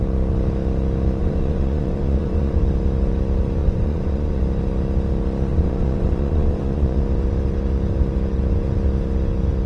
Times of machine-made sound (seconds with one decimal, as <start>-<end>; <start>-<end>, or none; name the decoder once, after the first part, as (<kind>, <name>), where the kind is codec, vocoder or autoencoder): 1.2-2.6 (vocoder, Vocos); 3.6-4.4; 5.5-7.0